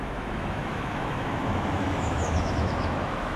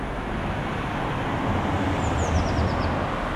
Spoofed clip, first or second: first